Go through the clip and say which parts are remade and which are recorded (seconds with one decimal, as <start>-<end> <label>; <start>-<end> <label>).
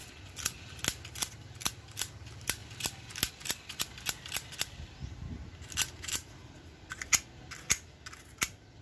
0.0-8.8 recorded